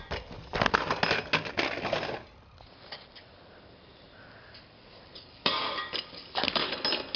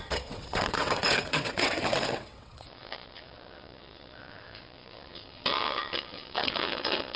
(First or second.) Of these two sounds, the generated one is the second